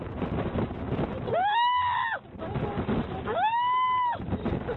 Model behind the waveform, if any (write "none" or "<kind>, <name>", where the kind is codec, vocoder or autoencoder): none